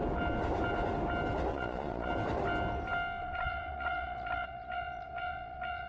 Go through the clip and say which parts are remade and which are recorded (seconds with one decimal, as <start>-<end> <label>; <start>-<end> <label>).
0.0-1.5 recorded; 1.5-2.1 remade; 2.1-3.2 recorded; 3.2-5.9 remade